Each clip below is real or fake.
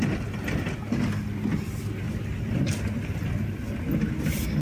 real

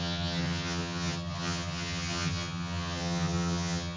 fake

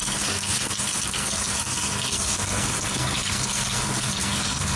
fake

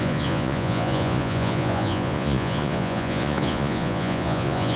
fake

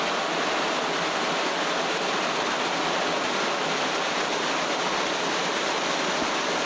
real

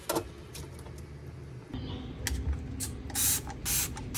real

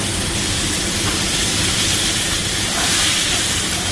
fake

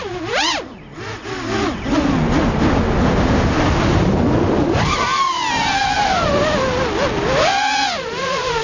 real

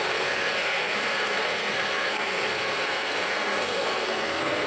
fake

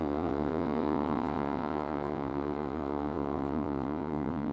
fake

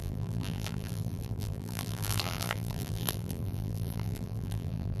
fake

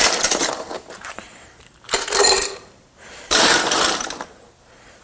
fake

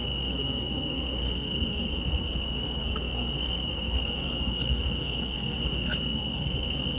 fake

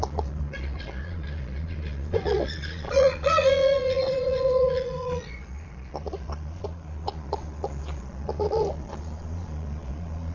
fake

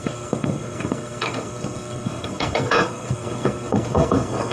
fake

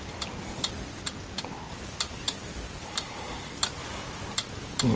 real